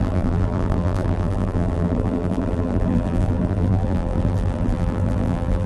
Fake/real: fake